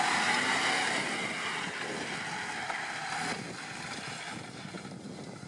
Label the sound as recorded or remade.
recorded